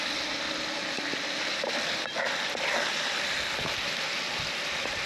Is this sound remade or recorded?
recorded